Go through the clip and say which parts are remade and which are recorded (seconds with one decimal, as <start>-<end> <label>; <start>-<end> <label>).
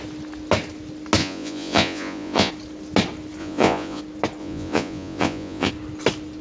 0.0-1.2 recorded; 1.2-2.5 remade; 2.5-3.4 recorded; 3.4-4.0 remade; 4.0-4.4 recorded; 4.4-5.7 remade; 5.7-6.4 recorded